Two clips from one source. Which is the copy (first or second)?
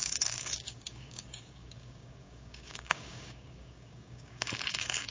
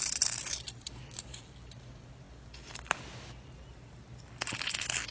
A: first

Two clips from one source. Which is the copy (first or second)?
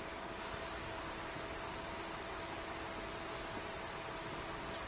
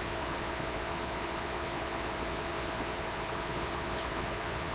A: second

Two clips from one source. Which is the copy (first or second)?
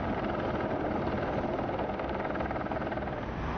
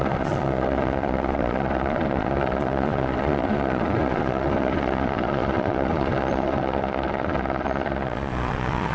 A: second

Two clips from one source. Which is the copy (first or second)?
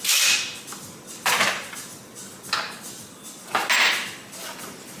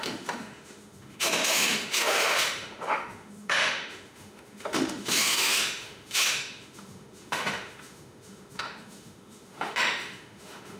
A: second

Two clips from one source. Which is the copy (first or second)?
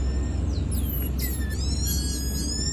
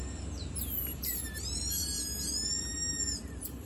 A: second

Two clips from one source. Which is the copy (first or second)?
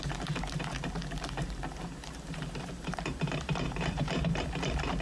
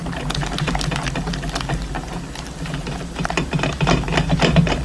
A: first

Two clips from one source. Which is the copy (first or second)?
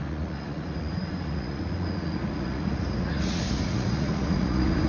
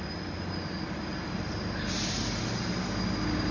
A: first